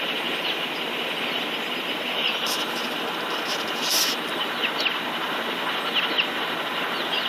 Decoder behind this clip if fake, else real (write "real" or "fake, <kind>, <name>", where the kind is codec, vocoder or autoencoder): real